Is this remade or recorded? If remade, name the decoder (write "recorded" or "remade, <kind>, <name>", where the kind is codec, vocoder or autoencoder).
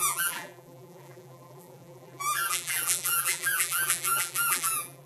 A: remade, vocoder, BigVGAN v2